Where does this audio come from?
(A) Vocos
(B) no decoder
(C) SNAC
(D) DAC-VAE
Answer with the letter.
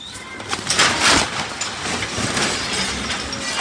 B